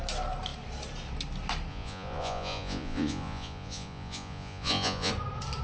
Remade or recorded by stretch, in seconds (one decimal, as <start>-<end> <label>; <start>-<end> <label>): 0.0-1.7 recorded; 1.7-5.1 remade; 5.1-5.6 recorded